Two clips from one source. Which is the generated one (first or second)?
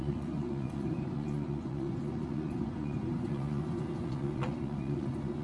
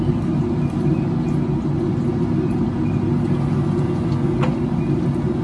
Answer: first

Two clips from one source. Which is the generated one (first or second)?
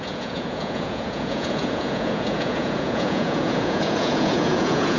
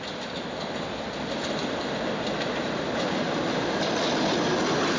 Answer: first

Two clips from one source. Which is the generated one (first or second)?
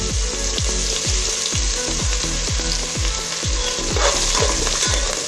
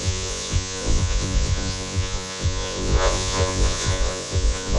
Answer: second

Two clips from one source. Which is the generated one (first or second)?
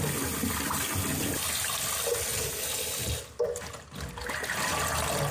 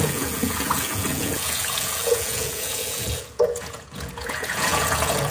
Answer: second